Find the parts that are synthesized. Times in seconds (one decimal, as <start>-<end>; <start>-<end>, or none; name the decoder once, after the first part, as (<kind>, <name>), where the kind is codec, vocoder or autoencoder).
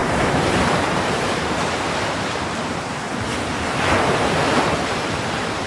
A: 0.0-3.3 (vocoder, BigVGAN v2); 4.0-5.7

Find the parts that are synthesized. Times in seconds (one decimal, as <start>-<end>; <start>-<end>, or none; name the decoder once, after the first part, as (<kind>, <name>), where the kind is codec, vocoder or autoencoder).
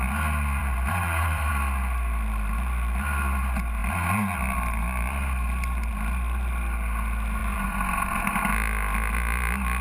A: 0.6-1.5 (vocoder, BigVGAN v2); 7.4-8.3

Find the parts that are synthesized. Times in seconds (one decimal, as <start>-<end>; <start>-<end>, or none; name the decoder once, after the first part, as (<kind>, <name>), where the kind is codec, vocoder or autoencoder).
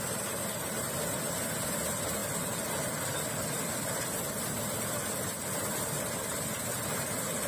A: none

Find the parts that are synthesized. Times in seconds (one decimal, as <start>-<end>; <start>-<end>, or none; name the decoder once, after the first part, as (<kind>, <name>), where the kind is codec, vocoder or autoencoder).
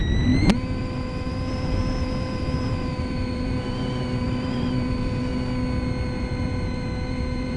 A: 0.8-5.3 (vocoder, BigVGAN v2); 6.2-7.6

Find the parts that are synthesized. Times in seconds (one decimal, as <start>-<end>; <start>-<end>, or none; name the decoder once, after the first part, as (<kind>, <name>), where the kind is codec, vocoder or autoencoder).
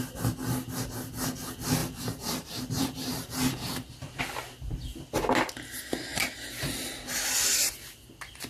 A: 1.8-4.2 (vocoder, BigVGAN v2)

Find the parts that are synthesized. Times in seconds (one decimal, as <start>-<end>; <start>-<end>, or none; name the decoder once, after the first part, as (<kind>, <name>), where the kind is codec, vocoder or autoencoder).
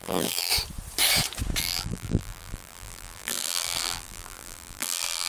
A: 0.0-0.5 (vocoder, BigVGAN v2); 1.6-5.3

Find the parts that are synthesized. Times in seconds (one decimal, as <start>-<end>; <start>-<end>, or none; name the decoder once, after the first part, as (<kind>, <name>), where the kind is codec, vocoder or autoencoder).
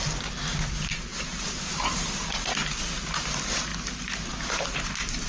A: 1.1-2.1 (vocoder, BigVGAN v2)